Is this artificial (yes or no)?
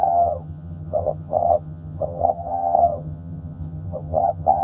yes